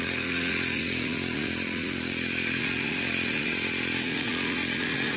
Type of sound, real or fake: fake